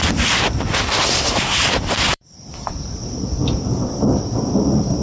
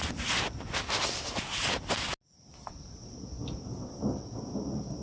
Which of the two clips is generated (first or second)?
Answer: first